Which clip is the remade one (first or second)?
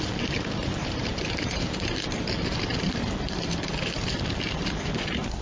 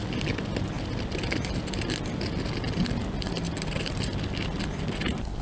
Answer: first